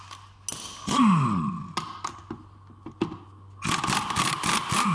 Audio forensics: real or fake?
real